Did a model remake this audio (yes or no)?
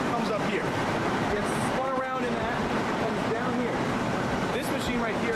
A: yes